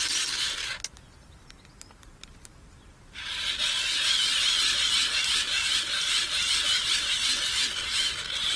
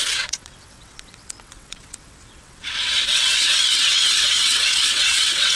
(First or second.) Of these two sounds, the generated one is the second